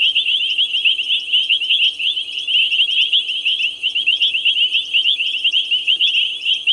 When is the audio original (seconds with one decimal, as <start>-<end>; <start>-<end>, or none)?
0.0-6.7

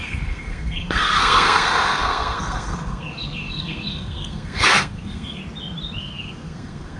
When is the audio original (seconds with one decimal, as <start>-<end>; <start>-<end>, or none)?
5.4-6.0

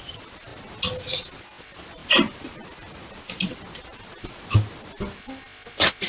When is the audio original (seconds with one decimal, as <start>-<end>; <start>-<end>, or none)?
0.0-6.1

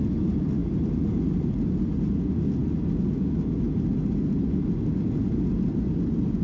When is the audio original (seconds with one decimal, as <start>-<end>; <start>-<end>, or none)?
0.0-6.4

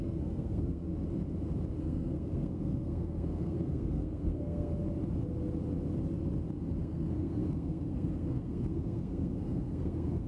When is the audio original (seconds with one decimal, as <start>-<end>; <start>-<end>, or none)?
0.9-1.8; 4.7-6.8

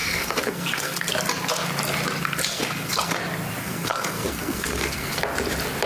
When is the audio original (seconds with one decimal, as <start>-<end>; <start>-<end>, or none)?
1.1-2.5; 3.2-3.6; 5.2-5.9

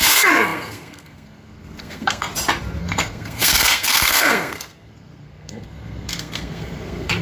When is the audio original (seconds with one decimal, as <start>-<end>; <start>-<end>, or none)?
2.3-2.8